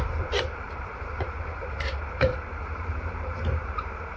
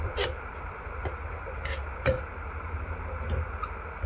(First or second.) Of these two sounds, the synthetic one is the first